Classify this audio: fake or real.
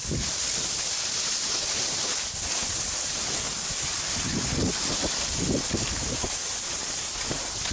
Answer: real